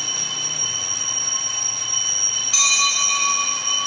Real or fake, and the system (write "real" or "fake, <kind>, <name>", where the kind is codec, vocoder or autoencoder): real